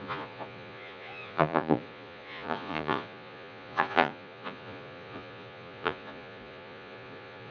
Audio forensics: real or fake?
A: fake